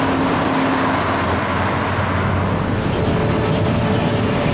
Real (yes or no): yes